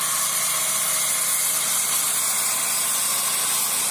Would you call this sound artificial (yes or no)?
no